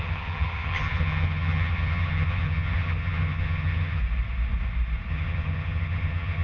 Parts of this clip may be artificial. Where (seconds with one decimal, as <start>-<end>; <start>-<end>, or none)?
0.0-4.0; 5.1-6.4